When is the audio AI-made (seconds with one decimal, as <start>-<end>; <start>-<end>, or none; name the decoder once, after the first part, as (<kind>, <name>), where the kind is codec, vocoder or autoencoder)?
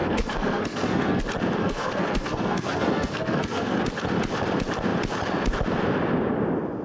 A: 0.0-1.2 (codec, SNAC); 1.6-3.8